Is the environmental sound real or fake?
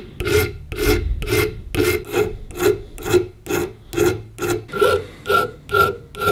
real